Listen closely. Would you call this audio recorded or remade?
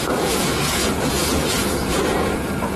remade